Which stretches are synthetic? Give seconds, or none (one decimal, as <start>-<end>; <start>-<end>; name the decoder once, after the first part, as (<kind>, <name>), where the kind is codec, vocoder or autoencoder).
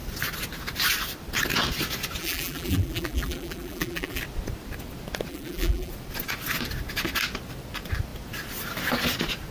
2.2-4.2 (vocoder, BigVGAN v2); 5.3-5.9